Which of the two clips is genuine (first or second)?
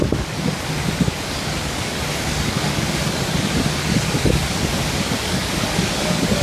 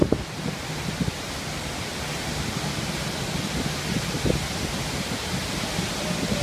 second